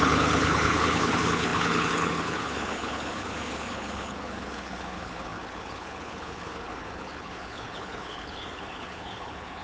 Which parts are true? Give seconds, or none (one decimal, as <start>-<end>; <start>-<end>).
none